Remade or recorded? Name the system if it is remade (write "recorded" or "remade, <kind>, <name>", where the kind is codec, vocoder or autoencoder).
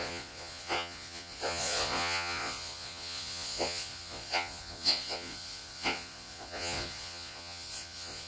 remade, vocoder, Vocos